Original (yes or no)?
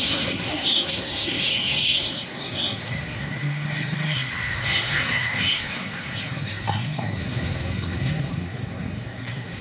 no